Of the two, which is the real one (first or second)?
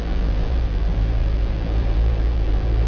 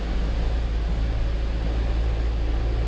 second